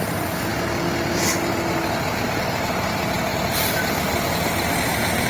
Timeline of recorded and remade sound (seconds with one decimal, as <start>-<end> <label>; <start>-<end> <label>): 0.0-5.3 remade